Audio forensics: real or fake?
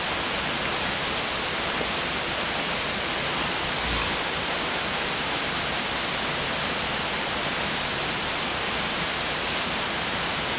real